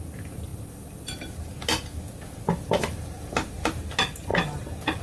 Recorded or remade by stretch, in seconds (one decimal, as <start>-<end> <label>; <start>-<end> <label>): 0.0-5.0 recorded